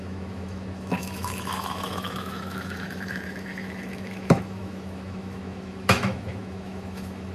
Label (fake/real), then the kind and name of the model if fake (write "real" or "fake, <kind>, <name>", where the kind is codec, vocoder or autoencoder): fake, autoencoder, DAC-VAE